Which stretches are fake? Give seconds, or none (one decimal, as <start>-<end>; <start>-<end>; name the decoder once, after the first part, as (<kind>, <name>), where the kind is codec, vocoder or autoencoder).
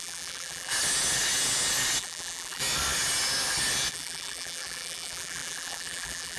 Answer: 0.0-0.7 (vocoder, BigVGAN v2); 2.0-2.6; 3.9-6.4